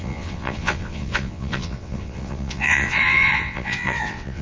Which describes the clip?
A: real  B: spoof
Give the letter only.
B